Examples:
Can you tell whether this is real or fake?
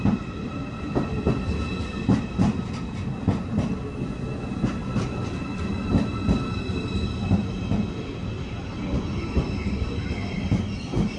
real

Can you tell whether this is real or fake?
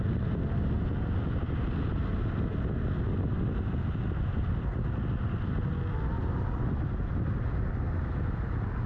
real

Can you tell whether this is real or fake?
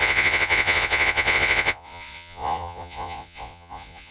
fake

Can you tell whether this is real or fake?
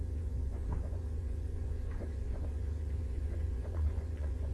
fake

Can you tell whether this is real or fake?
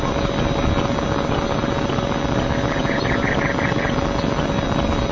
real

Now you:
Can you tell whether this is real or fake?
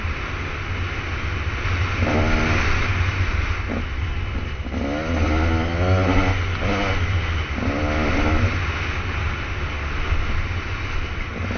real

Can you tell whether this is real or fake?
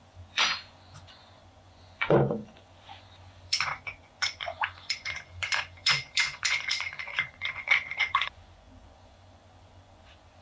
fake